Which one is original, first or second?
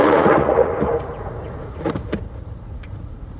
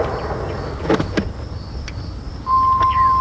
second